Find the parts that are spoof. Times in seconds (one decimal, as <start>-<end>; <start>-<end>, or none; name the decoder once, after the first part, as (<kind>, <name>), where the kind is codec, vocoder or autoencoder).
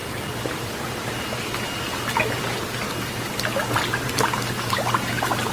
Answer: 0.0-1.8 (vocoder, BigVGAN v2)